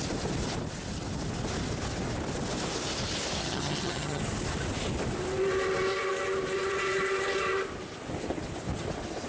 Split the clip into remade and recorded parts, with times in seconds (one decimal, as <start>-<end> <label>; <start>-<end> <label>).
0.0-3.4 recorded; 3.4-4.2 remade; 4.2-9.3 recorded